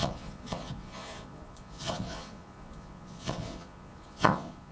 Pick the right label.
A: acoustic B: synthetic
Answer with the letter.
B